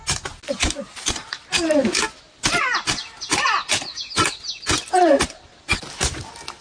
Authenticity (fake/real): real